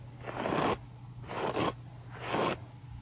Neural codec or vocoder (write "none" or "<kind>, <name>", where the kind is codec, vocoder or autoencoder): none